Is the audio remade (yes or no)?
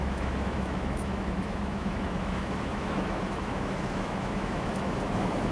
yes